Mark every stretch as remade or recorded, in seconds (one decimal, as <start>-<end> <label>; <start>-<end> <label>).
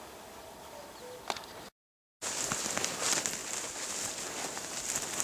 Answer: 0.0-5.2 recorded